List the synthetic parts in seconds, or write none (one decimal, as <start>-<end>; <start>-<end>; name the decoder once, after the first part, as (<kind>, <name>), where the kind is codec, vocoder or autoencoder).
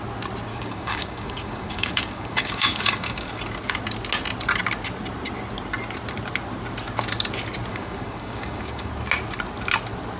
0.5-3.3 (codec, DAC); 7.7-8.9